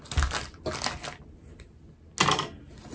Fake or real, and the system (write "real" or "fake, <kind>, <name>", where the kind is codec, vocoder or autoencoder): real